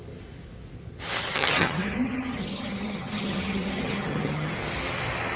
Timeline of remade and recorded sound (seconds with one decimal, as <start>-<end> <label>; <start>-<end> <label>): 0.0-1.3 recorded; 1.3-4.5 remade; 4.5-5.4 recorded